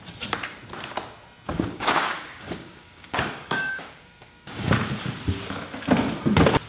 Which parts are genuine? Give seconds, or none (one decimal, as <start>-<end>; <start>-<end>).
0.0-1.5; 4.7-6.7